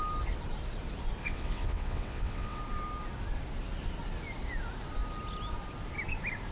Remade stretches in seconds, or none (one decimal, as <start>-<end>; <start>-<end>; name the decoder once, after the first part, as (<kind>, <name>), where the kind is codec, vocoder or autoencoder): 1.2-2.6 (vocoder, WaveNeXt)